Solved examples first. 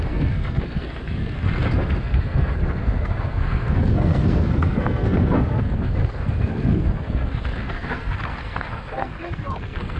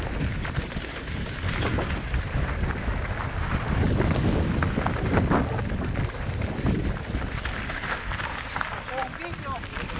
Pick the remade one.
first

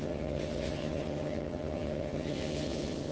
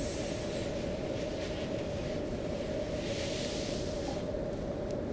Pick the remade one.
first